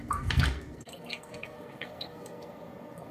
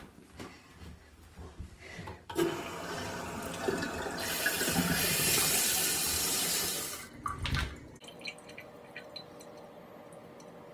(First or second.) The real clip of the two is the second